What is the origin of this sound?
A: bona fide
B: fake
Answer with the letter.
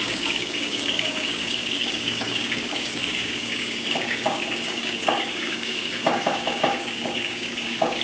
B